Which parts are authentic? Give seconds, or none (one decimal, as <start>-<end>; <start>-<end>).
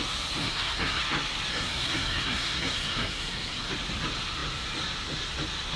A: 0.0-0.4; 1.0-1.5; 3.7-5.8